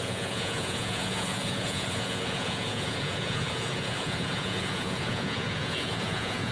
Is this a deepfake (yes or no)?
yes